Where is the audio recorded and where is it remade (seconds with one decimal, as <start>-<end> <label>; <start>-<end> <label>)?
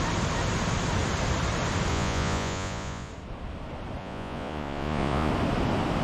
0.0-1.9 recorded; 1.9-3.1 remade; 3.1-4.0 recorded; 4.0-5.3 remade; 5.3-6.0 recorded